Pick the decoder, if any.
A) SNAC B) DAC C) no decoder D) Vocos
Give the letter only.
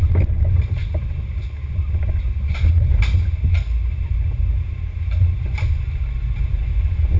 C